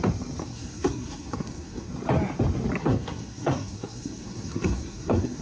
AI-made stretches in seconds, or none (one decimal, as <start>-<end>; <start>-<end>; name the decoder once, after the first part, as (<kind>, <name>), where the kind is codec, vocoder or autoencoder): 0.4-1.9 (codec, SNAC); 2.8-5.4